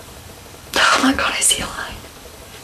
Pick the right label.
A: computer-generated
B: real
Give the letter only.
A